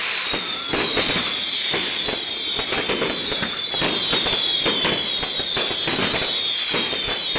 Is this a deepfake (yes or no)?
no